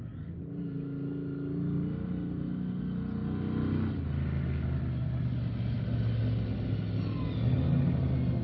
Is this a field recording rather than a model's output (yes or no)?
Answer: yes